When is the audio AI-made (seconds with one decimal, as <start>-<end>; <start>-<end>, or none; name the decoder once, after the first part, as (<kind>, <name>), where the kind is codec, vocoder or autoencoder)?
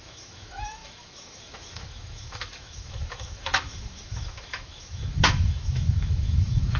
0.0-6.8 (autoencoder, DAC-VAE)